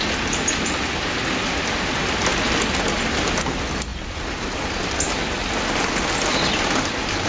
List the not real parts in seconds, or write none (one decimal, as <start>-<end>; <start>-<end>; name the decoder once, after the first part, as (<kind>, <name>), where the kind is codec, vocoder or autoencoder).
none